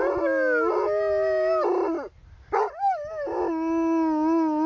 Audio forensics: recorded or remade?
recorded